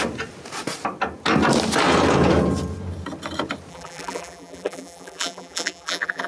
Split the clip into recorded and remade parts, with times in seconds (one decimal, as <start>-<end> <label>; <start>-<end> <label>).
0.0-3.7 recorded; 3.7-6.3 remade

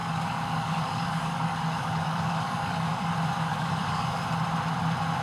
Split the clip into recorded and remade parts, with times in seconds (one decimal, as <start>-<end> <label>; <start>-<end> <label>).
0.0-3.1 remade; 3.1-3.5 recorded; 3.5-4.2 remade; 4.2-5.2 recorded

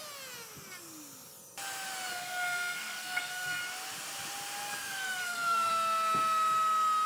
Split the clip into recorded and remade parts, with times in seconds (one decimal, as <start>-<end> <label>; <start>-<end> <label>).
0.0-2.1 recorded; 2.1-3.6 remade; 3.6-4.8 recorded; 4.8-5.7 remade; 5.7-7.1 recorded

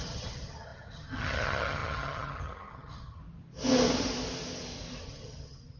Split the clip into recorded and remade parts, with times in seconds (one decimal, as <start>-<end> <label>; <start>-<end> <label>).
0.0-3.2 remade; 3.2-5.0 recorded; 5.0-5.8 remade

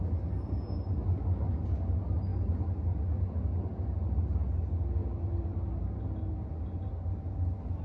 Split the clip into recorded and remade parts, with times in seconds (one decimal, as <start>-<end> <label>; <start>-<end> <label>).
0.0-7.8 recorded

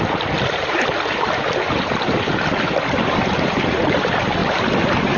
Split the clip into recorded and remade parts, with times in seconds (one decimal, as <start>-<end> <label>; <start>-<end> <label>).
0.0-5.2 recorded